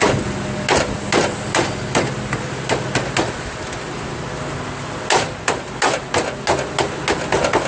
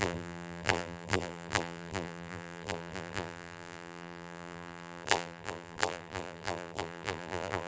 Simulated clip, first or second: second